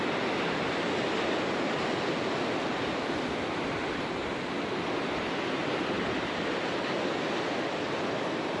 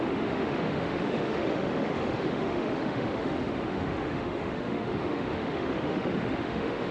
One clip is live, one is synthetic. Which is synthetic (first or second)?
second